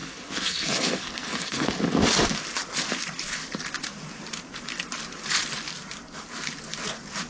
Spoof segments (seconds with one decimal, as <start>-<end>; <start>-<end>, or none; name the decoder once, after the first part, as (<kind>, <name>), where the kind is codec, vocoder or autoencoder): 0.0-1.7 (codec, SNAC)